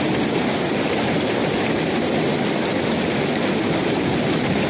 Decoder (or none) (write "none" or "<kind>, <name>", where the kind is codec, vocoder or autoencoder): none